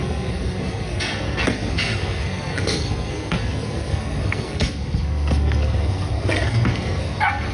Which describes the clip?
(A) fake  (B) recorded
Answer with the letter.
A